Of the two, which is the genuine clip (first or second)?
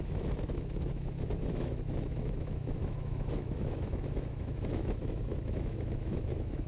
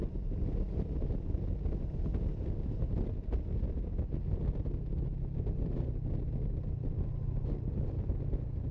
second